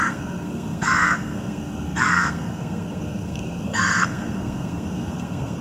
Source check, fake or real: fake